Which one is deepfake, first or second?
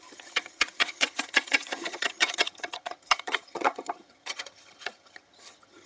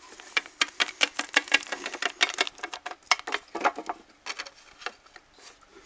first